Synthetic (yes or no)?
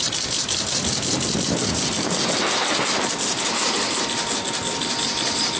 no